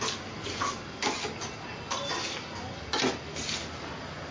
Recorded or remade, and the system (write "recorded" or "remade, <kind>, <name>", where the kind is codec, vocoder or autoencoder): recorded